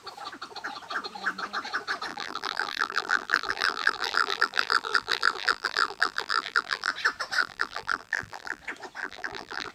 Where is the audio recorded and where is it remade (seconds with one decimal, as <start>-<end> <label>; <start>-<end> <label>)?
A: 0.0-2.1 recorded; 2.1-6.9 remade; 6.9-7.4 recorded; 7.4-8.6 remade; 8.6-9.0 recorded; 9.0-9.7 remade